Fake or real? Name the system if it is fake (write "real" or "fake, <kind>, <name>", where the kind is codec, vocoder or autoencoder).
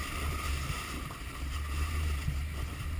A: fake, vocoder, BigVGAN v2